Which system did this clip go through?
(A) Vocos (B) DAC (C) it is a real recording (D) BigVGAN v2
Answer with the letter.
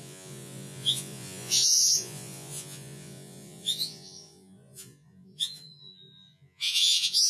A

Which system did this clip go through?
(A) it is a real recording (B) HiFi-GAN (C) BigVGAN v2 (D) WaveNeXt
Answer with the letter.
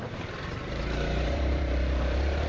C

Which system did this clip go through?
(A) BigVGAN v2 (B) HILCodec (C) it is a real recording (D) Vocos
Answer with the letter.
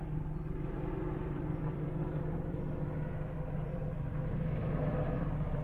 A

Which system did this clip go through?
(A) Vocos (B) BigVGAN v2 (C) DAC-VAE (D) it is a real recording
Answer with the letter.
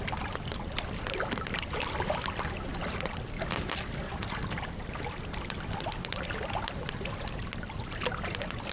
B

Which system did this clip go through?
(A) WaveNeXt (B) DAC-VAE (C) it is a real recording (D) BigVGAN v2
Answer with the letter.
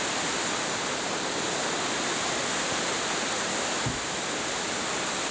C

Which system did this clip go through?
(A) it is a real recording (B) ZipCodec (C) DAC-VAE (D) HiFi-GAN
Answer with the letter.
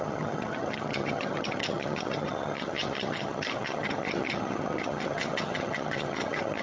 D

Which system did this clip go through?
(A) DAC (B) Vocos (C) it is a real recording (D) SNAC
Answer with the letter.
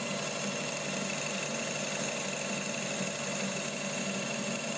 C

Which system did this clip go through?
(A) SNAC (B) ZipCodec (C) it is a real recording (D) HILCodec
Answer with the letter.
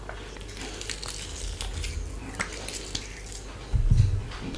C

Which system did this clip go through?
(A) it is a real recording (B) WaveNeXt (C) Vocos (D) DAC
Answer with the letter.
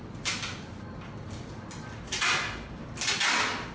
A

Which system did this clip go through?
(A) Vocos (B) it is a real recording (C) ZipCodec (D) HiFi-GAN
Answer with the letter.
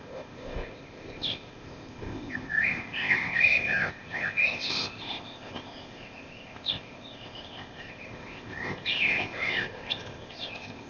C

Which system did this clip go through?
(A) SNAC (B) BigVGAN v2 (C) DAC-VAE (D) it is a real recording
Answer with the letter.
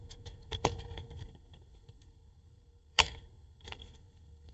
A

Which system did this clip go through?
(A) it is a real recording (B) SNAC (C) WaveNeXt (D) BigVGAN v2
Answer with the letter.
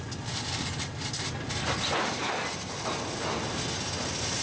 A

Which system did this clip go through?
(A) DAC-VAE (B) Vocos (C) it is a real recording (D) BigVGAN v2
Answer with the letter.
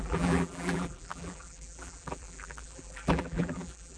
D